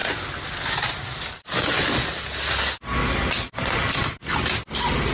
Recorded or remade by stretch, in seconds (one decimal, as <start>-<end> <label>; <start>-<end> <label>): 0.0-5.1 recorded